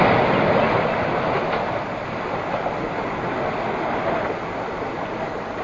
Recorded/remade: recorded